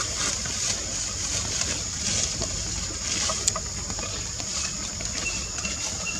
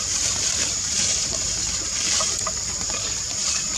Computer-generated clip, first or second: second